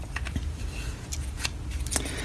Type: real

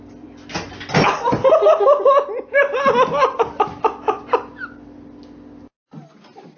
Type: real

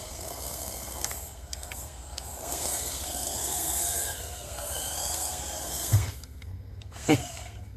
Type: fake